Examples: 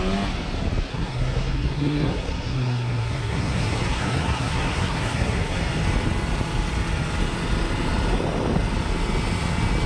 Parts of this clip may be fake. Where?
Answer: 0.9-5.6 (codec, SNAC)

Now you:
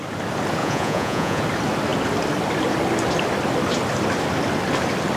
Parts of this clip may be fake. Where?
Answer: 0.6-1.4 (vocoder, Vocos)